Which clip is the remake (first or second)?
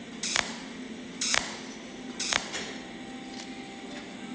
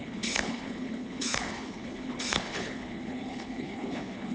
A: second